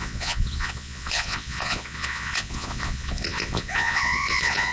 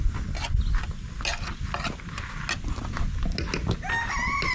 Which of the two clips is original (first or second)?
second